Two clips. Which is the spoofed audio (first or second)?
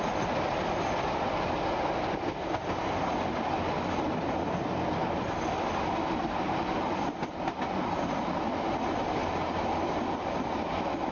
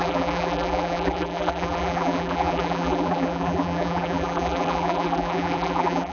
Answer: second